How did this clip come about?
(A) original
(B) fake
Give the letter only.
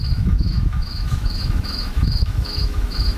B